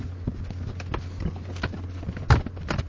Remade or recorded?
recorded